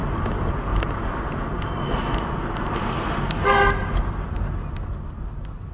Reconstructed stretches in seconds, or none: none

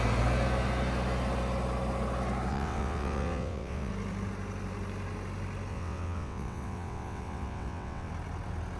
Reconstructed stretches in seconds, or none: 2.5-3.9; 5.7-8.1

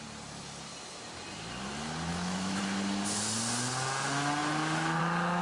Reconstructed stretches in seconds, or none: 2.1-2.6